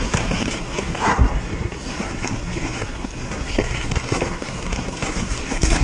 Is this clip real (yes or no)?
no